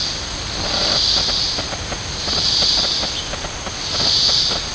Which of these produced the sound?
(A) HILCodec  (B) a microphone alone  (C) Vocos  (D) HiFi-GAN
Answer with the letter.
B